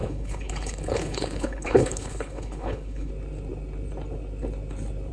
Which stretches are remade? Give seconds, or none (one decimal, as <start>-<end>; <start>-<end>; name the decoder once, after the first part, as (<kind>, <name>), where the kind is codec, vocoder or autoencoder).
0.0-3.1 (codec, HILCodec)